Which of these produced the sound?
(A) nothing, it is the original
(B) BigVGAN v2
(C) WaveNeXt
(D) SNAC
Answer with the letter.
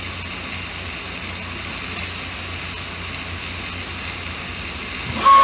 A